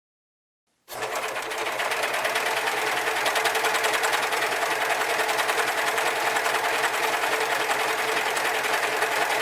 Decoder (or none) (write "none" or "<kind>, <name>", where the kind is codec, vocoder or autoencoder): vocoder, BigVGAN v2